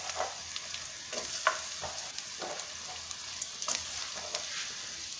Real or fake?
real